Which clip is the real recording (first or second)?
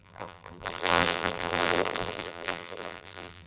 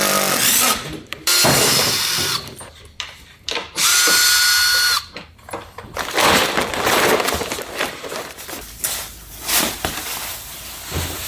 second